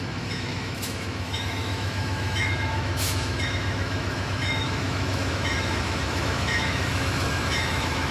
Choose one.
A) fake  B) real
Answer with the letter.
A